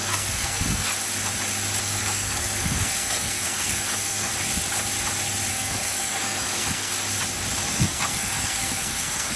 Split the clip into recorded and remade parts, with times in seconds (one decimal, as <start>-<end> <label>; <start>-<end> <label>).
0.0-0.9 remade; 0.9-1.8 recorded; 1.8-4.3 remade; 4.3-5.5 recorded; 5.5-6.9 remade; 6.9-7.7 recorded; 7.7-9.4 remade